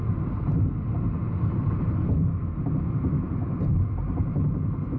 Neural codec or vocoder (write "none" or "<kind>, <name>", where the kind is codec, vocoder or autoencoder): none